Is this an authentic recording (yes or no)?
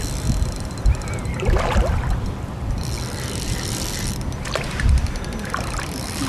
yes